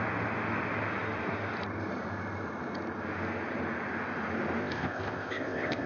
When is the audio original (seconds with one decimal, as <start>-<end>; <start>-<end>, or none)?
0.0-4.6